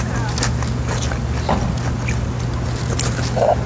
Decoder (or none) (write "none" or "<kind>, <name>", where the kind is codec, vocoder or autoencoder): none